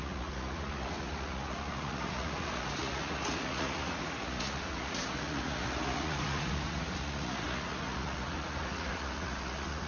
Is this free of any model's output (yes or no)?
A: no